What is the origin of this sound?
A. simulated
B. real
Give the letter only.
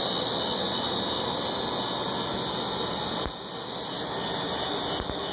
B